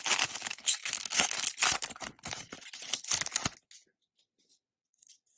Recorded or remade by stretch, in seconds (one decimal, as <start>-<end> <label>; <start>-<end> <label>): 0.0-0.5 recorded; 0.5-1.4 remade; 1.4-5.4 recorded